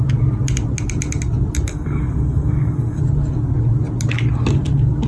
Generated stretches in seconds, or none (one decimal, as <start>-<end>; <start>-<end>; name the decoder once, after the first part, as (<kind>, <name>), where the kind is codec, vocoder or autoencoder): 1.7-3.0 (codec, SNAC)